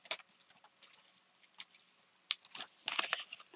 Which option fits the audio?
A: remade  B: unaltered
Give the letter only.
B